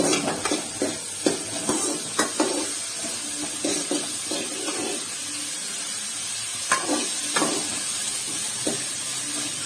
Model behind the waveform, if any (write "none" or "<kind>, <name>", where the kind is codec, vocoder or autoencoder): none